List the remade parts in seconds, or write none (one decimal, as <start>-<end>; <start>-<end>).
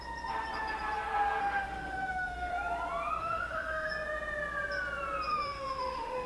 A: 1.4-2.5; 3.2-3.9; 5.3-6.3